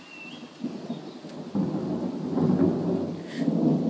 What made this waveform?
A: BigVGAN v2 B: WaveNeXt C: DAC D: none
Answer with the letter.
D